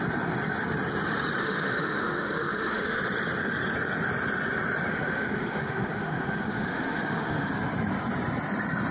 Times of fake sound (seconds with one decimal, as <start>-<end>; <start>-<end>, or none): 1.4-3.0; 4.9-7.5

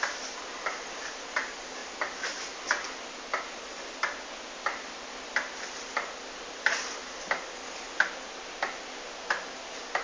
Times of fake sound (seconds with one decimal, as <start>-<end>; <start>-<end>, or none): none

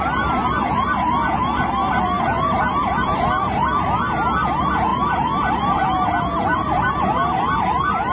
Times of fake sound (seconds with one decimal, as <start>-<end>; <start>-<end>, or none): none

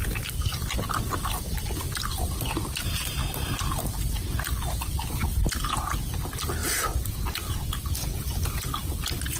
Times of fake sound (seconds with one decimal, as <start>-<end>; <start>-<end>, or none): none

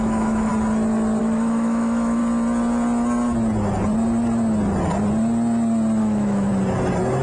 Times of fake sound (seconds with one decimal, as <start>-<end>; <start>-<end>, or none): 0.0-0.5; 1.2-2.2; 6.0-6.5

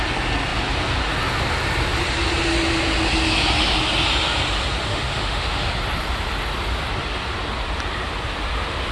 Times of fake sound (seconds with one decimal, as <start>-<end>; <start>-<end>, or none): 4.9-5.7

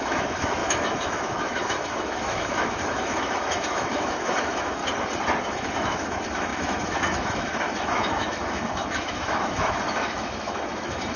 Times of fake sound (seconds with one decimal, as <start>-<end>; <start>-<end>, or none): 0.0-4.8; 5.4-11.2